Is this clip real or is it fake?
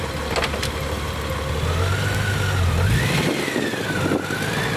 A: real